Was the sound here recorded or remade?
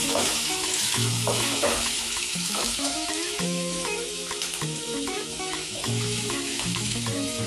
remade